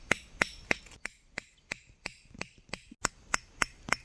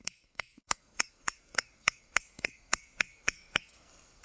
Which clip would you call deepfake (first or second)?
second